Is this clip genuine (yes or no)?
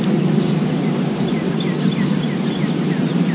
yes